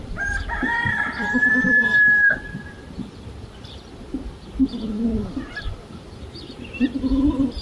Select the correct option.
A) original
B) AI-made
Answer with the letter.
A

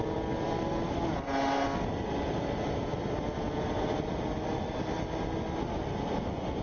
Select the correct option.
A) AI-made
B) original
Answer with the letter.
B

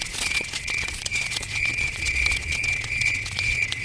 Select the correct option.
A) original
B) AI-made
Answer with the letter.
B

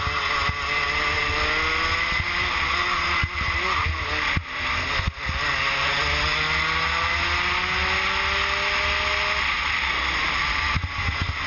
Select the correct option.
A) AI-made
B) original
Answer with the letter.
B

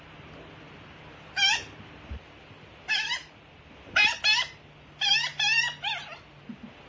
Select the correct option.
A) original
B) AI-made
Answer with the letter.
A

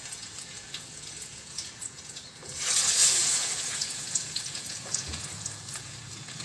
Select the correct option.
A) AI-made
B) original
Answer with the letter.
A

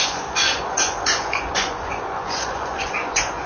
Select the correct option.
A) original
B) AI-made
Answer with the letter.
B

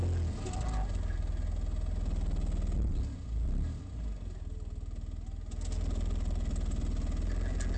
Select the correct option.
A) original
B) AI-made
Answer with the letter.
A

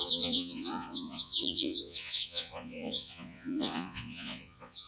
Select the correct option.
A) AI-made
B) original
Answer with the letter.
A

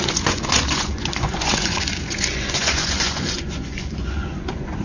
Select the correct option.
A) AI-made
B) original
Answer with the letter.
A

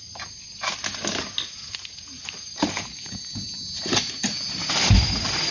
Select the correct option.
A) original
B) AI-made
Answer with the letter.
A